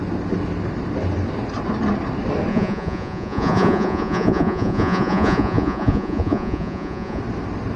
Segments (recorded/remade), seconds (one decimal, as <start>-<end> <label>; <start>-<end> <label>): 0.0-2.5 recorded; 2.5-7.2 remade; 7.2-7.8 recorded